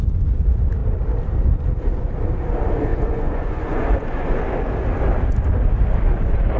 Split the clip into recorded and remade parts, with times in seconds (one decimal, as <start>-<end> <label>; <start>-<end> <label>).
0.0-2.9 recorded; 2.9-4.4 remade; 4.4-6.6 recorded